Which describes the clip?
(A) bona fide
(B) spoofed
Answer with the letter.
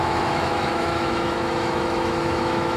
B